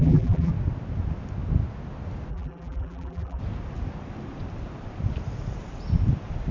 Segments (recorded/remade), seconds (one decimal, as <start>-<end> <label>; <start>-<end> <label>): 0.0-0.5 remade; 0.5-2.3 recorded; 2.3-3.4 remade; 3.4-6.5 recorded